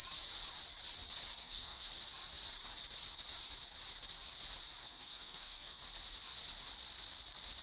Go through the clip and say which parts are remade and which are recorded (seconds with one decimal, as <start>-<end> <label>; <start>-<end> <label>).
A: 0.0-1.4 recorded; 1.4-1.9 remade; 1.9-4.8 recorded; 4.8-5.8 remade; 5.8-7.6 recorded